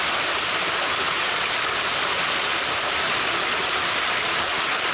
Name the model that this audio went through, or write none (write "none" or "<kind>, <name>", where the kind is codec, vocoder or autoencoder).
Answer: none